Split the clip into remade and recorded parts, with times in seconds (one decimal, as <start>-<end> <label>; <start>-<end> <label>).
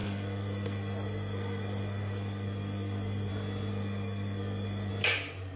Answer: 0.0-3.3 remade; 3.3-3.7 recorded; 3.7-4.9 remade; 4.9-5.6 recorded